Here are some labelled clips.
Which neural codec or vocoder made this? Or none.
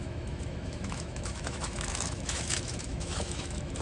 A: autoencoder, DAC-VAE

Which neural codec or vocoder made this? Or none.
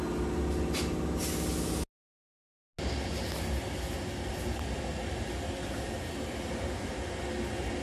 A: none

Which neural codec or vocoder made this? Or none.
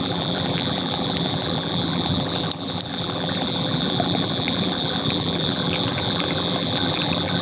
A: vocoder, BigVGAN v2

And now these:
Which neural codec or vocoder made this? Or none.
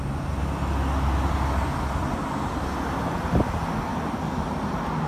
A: none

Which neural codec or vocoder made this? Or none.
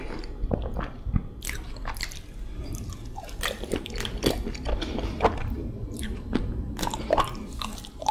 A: vocoder, BigVGAN v2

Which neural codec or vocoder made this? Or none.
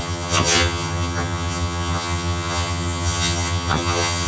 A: vocoder, HiFi-GAN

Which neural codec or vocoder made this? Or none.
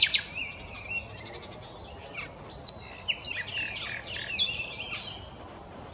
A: none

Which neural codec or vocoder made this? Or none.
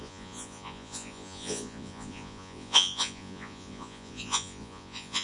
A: vocoder, Vocos